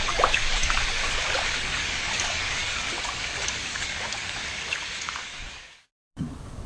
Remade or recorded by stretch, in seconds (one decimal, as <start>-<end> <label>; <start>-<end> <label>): 0.0-6.7 remade